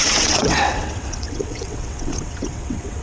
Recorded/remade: remade